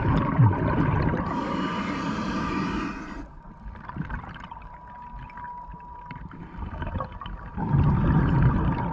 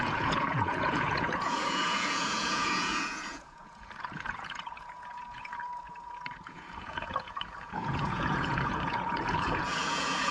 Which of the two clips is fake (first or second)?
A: second